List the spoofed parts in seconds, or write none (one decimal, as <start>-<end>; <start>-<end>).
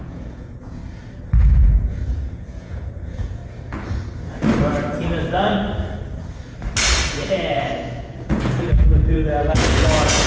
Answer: 0.0-0.8; 1.4-3.4; 7.1-9.2; 9.8-10.3